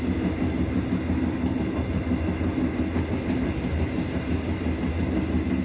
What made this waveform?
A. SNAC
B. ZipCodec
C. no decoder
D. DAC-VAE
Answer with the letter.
C